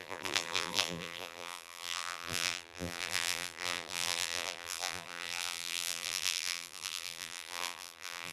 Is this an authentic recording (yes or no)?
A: no